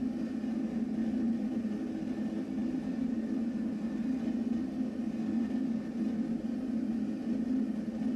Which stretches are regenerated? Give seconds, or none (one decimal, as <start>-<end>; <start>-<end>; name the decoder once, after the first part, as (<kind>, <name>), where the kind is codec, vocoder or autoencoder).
2.6-3.6 (vocoder, BigVGAN v2)